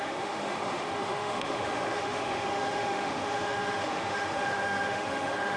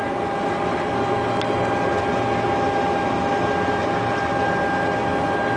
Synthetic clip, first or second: first